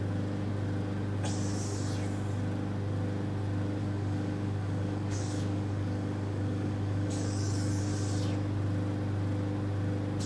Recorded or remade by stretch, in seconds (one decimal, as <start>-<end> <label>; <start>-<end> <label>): 0.0-3.8 recorded; 3.8-7.8 remade; 7.8-10.3 recorded